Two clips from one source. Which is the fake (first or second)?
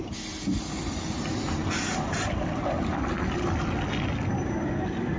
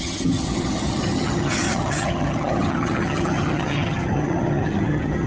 second